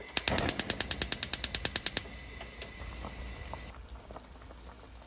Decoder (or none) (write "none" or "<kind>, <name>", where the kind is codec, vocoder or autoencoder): none